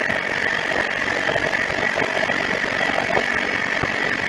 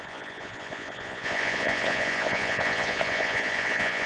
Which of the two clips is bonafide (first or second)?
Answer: first